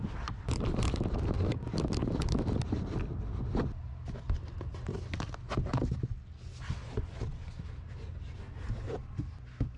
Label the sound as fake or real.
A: real